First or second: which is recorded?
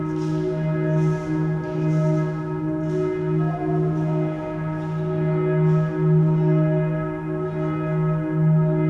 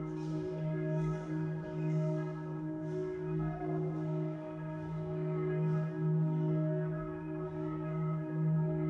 first